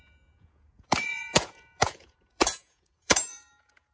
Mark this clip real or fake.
fake